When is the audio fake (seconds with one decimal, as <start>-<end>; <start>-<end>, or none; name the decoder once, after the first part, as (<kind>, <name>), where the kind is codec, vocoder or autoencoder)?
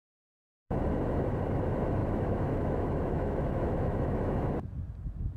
0.0-0.8 (autoencoder, DAC-VAE); 2.0-4.5